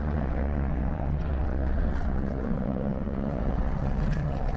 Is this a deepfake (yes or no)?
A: yes